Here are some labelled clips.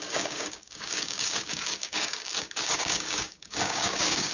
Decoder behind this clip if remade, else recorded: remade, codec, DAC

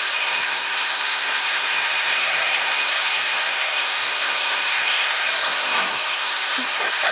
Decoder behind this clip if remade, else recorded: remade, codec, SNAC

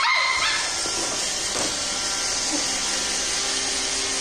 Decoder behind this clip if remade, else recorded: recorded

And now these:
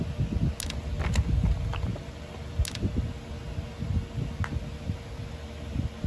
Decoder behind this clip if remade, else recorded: recorded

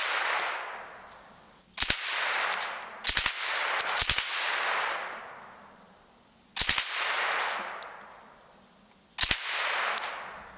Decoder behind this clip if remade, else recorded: recorded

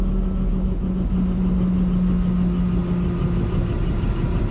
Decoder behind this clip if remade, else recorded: recorded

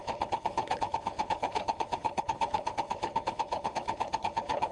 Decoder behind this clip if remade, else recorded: remade, codec, HILCodec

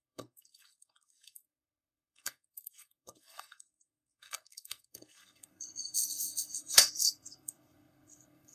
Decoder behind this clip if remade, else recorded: remade, codec, SNAC